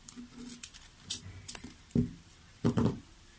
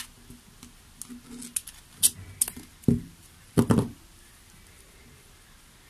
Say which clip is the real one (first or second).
second